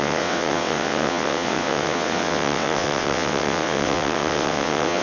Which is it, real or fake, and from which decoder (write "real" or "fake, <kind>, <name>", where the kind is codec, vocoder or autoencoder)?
fake, vocoder, WaveNeXt